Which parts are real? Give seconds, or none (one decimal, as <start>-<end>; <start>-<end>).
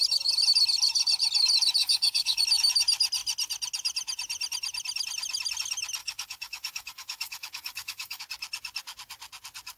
0.0-1.8; 2.4-6.0; 8.2-9.8